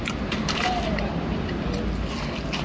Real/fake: real